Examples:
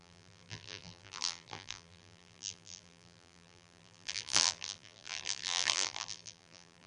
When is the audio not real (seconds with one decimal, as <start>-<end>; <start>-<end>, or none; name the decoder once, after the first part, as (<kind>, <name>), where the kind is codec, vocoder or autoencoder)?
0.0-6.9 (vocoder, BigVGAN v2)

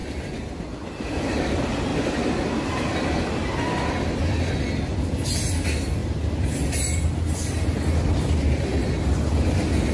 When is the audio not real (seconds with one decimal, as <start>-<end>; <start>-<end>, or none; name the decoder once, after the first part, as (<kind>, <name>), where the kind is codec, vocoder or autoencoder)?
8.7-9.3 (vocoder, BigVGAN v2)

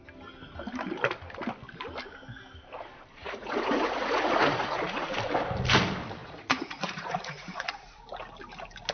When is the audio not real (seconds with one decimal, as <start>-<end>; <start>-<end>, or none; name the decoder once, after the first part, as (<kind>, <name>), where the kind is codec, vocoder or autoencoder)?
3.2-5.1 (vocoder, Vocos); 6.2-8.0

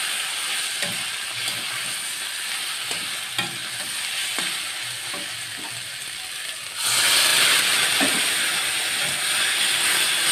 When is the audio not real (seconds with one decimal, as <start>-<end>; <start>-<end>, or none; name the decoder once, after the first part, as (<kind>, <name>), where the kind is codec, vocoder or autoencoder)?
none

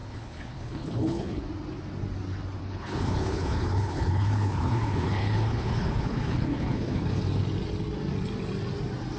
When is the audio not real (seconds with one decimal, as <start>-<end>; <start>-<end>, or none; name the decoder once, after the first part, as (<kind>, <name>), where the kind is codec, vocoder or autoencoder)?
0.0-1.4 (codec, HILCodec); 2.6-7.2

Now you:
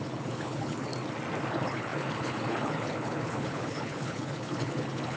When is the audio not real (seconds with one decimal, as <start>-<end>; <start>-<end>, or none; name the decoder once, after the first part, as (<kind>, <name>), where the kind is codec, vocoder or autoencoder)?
0.0-0.9 (codec, HILCodec); 1.5-5.2

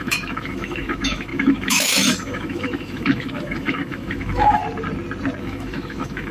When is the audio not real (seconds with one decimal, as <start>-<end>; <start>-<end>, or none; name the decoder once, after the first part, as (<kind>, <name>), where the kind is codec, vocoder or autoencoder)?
0.0-4.6 (autoencoder, DAC-VAE); 5.4-6.3

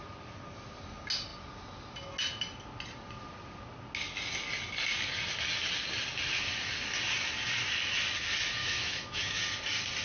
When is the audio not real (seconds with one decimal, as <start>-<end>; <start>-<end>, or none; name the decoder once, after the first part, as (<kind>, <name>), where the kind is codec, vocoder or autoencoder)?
8.6-9.4 (autoencoder, DAC-VAE)